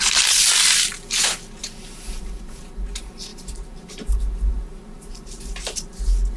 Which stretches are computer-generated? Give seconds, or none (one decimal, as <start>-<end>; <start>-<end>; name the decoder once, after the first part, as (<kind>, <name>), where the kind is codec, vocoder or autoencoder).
1.6-2.3 (vocoder, BigVGAN v2); 3.3-5.9